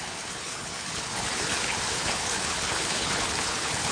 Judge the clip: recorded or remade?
remade